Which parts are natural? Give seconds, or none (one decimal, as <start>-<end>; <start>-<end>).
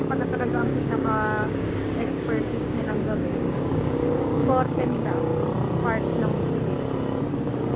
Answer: 5.3-7.2